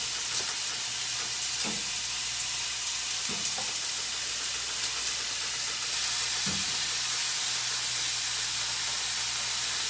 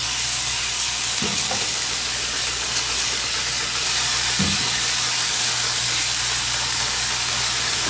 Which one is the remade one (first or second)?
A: second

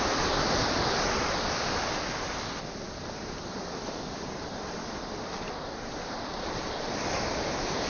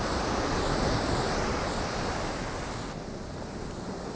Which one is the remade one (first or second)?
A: first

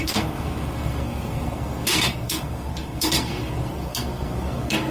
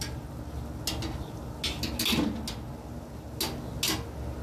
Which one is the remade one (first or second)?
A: first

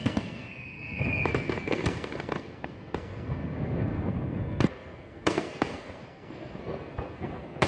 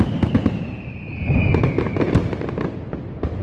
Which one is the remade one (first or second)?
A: first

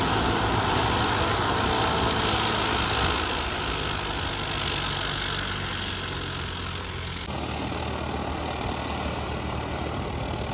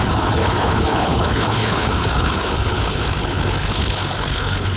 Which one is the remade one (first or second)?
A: second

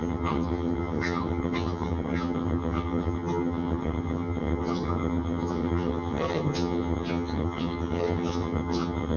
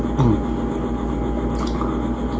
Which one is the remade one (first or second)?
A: first